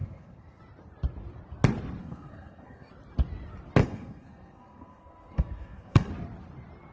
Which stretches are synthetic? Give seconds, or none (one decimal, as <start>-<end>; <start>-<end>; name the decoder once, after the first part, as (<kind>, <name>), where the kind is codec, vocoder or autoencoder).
0.0-0.6 (codec, SNAC); 2.0-2.9; 3.8-6.1